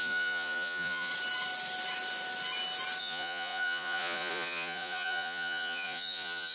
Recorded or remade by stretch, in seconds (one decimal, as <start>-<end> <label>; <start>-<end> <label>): 0.0-1.1 remade; 1.1-3.0 recorded; 3.0-6.5 remade